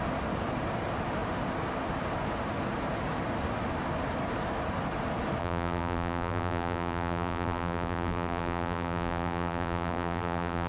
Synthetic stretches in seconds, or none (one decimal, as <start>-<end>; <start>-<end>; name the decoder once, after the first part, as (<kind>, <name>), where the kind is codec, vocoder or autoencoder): 5.4-10.7 (vocoder, BigVGAN v2)